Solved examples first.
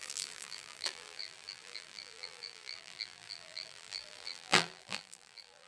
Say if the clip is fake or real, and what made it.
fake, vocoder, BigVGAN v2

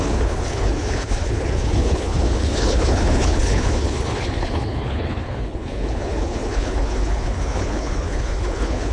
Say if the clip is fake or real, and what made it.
fake, codec, HILCodec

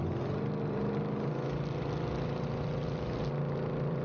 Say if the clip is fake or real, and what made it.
real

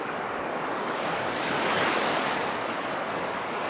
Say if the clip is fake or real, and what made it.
fake, codec, DAC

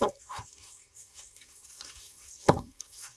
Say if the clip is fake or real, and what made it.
fake, codec, SNAC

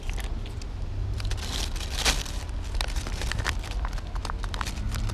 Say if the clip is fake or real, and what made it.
real